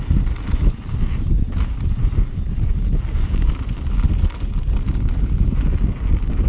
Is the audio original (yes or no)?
yes